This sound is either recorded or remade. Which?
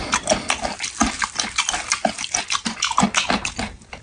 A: recorded